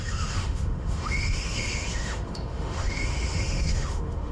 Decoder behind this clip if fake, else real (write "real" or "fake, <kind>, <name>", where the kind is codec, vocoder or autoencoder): fake, autoencoder, DAC-VAE